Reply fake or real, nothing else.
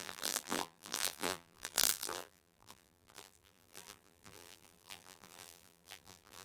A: fake